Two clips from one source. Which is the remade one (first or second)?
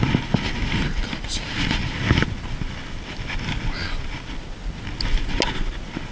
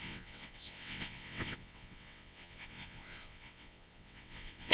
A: second